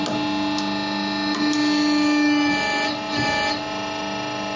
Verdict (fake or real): real